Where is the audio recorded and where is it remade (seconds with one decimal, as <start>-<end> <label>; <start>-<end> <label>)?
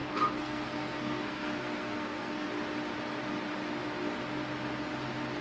0.0-2.5 remade; 2.5-5.4 recorded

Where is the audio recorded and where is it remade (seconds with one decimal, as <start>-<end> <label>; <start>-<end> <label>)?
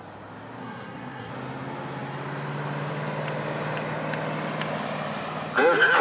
0.0-0.6 recorded; 0.6-1.3 remade; 1.3-6.0 recorded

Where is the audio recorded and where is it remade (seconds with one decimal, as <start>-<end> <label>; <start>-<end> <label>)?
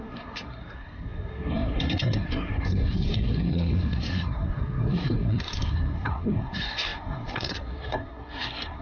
0.0-8.8 remade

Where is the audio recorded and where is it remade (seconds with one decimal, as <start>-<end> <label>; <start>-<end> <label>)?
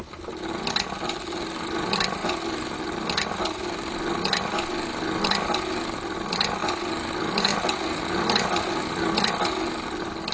0.0-10.3 recorded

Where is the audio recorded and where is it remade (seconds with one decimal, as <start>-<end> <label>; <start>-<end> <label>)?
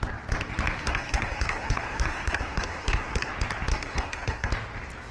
0.0-0.8 recorded; 0.8-3.3 remade; 3.3-3.7 recorded; 3.7-4.5 remade; 4.5-5.1 recorded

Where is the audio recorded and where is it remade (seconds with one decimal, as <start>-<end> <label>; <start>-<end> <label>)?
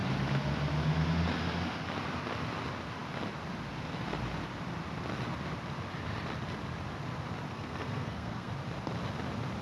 0.0-7.5 recorded; 7.5-8.5 remade; 8.5-9.6 recorded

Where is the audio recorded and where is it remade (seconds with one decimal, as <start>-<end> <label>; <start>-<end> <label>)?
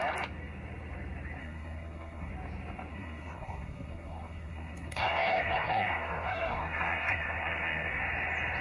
0.0-1.4 recorded; 1.4-2.3 remade; 2.3-2.9 recorded; 2.9-8.0 remade; 8.0-8.6 recorded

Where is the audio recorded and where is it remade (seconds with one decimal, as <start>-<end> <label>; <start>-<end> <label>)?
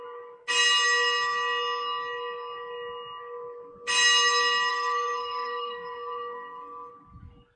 0.0-4.7 recorded; 4.7-6.9 remade; 6.9-7.6 recorded